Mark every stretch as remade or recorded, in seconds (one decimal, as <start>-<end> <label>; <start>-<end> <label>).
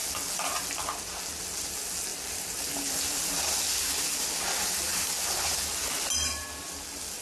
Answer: 0.0-7.2 recorded